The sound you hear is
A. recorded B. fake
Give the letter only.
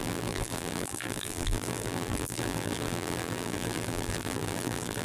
B